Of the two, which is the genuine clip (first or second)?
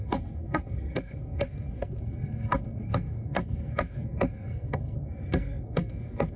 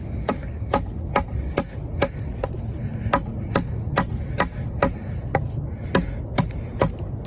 second